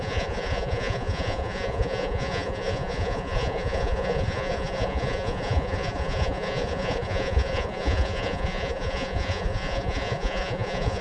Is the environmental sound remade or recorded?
remade